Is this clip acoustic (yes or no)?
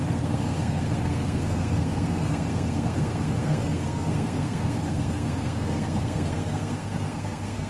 no